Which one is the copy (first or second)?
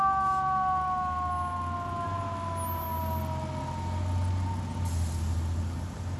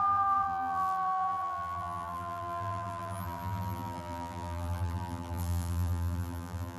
second